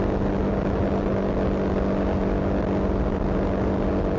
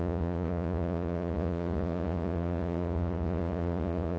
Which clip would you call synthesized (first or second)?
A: second